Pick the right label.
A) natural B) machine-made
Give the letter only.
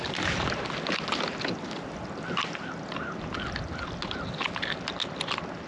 A